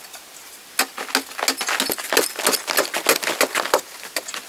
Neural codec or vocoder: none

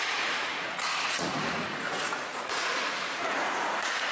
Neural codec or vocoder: vocoder, Vocos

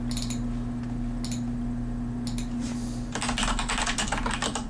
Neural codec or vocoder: none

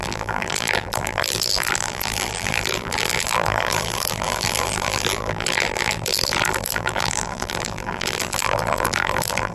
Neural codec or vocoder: vocoder, BigVGAN v2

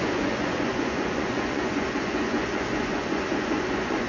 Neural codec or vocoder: vocoder, Vocos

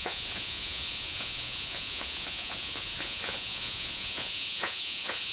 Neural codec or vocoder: vocoder, Vocos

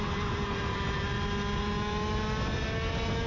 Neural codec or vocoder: none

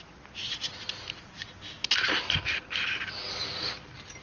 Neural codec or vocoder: none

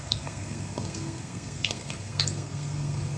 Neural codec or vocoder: codec, SNAC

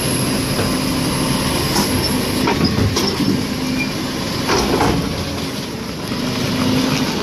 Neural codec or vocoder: none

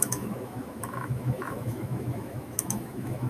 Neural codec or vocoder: autoencoder, DAC-VAE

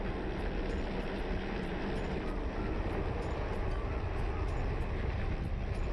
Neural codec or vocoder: none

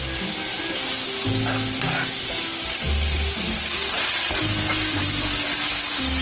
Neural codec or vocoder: none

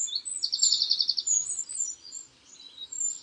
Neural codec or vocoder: none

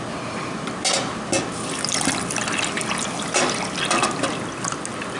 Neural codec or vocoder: none